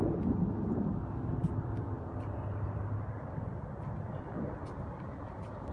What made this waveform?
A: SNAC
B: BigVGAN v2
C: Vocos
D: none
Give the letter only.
D